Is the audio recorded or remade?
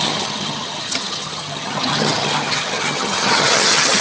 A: remade